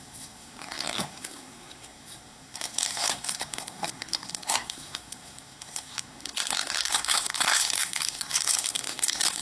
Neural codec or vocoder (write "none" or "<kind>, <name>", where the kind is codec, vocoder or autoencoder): codec, SNAC